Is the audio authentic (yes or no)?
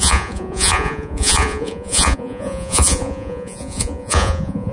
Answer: no